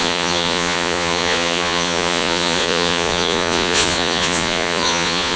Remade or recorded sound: remade